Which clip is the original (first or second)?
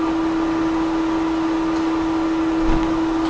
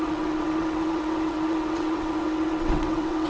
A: first